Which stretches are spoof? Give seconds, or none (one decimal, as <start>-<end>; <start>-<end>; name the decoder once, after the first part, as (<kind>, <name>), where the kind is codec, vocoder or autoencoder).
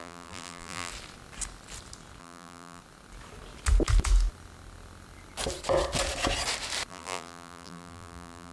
0.0-0.9 (vocoder, BigVGAN v2); 2.2-2.8; 6.9-8.5